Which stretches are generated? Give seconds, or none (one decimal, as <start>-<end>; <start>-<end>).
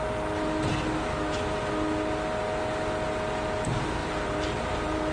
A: 4.0-5.1